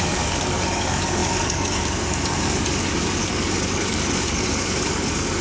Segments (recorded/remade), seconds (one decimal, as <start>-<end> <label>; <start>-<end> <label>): 0.0-5.4 remade